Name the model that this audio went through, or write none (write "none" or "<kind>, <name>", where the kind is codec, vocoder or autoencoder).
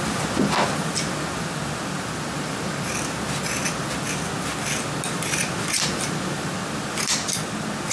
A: none